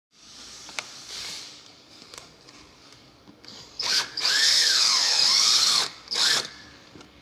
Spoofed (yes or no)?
yes